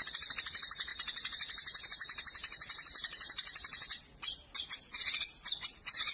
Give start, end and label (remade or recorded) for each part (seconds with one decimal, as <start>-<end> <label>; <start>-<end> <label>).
0.0-6.1 recorded